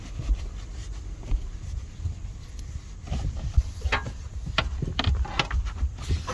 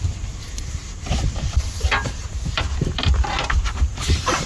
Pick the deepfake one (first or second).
second